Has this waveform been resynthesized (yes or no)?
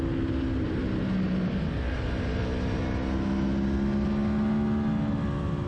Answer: no